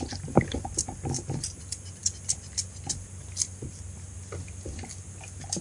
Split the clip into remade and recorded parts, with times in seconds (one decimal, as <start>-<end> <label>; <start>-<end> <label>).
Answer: 0.0-5.6 recorded

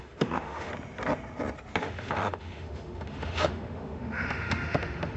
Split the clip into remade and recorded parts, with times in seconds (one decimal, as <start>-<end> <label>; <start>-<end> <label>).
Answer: 0.0-0.7 remade; 0.7-1.8 recorded; 1.8-5.2 remade